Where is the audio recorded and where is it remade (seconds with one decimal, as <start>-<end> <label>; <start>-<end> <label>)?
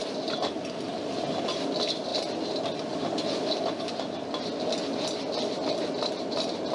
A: 0.0-6.7 recorded